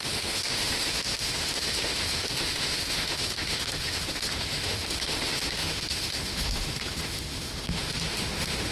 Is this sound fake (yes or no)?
yes